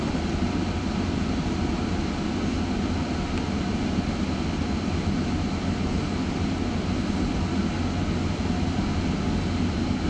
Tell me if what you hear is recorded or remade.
recorded